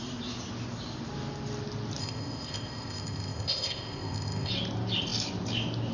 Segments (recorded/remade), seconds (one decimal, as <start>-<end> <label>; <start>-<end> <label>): 0.0-2.0 recorded; 2.0-4.5 remade; 4.5-5.9 recorded